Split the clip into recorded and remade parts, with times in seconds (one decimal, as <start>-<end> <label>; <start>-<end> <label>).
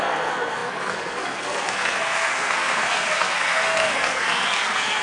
0.0-5.0 remade